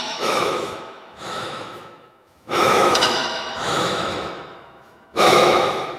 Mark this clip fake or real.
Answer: fake